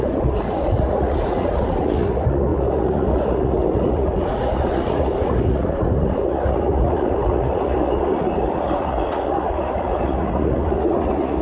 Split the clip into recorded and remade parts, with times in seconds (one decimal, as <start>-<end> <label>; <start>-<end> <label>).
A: 0.0-11.4 remade